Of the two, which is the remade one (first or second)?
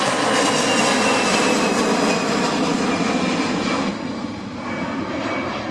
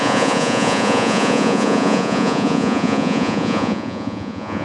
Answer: second